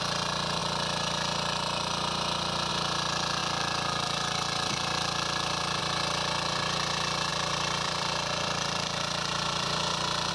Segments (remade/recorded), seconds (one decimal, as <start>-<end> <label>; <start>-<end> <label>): 0.0-3.4 recorded; 3.4-5.8 remade; 5.8-7.3 recorded; 7.3-10.3 remade